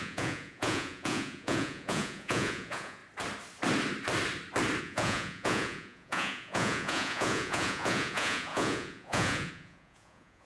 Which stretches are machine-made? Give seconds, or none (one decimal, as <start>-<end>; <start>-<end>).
0.0-3.0; 4.8-10.5

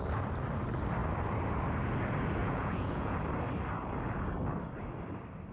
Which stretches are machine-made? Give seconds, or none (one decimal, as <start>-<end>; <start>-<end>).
2.4-3.2

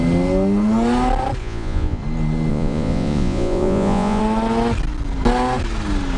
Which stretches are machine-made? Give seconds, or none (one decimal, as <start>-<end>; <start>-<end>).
1.4-2.0; 2.5-4.2

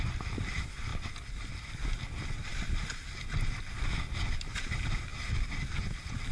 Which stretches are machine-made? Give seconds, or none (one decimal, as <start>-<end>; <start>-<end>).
none

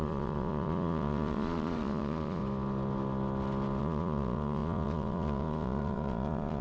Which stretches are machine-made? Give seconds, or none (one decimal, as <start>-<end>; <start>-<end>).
0.0-2.4; 3.8-6.6

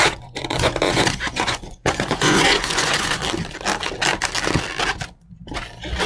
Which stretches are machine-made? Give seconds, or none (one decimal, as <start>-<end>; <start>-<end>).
0.0-3.2

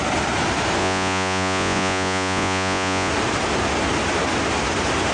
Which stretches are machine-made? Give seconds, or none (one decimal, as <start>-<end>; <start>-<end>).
0.8-3.1